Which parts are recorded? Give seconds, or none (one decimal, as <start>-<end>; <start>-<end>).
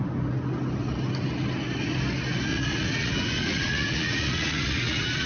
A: 0.0-2.5